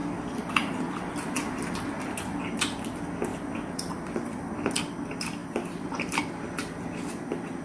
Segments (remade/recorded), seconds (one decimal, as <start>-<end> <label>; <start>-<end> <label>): 0.0-2.0 remade; 2.0-3.3 recorded; 3.3-4.8 remade; 4.8-5.4 recorded; 5.4-6.2 remade; 6.2-7.6 recorded